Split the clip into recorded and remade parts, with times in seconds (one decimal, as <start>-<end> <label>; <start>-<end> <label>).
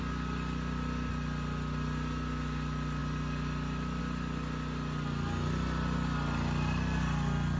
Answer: 0.0-7.6 recorded